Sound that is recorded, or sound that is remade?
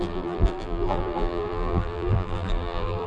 remade